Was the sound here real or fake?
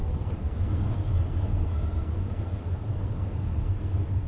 fake